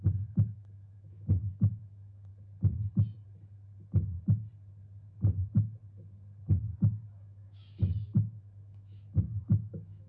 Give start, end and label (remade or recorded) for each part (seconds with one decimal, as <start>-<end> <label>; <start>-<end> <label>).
0.0-2.3 remade; 2.3-7.1 recorded; 7.1-10.1 remade